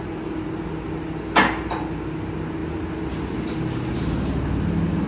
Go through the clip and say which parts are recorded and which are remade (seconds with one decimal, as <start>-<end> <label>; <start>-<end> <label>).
0.0-5.1 recorded